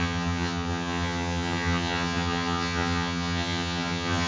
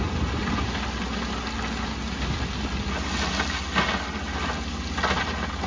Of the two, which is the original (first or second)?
second